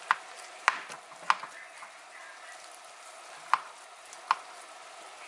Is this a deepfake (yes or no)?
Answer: no